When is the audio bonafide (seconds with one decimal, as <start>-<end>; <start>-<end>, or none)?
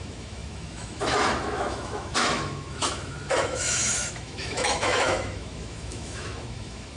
none